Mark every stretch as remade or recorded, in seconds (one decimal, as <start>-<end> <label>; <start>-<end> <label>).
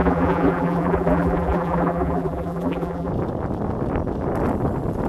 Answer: 0.0-3.1 remade; 3.1-5.1 recorded